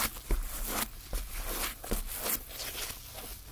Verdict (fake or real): real